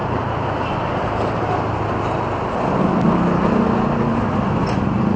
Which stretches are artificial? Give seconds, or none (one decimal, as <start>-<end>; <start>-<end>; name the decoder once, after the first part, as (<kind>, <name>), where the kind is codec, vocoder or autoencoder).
0.0-1.4 (vocoder, BigVGAN v2)